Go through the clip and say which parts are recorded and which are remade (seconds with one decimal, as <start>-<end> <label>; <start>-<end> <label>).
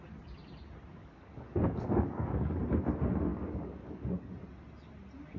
0.0-1.0 recorded; 1.0-2.6 remade; 2.6-3.3 recorded; 3.3-4.3 remade; 4.3-5.4 recorded